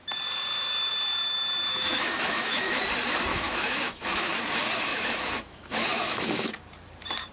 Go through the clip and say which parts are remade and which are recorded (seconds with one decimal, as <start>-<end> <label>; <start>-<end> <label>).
0.0-1.7 recorded; 1.7-2.8 remade; 2.8-3.3 recorded; 3.3-4.4 remade; 4.4-4.9 recorded; 4.9-6.5 remade; 6.5-7.3 recorded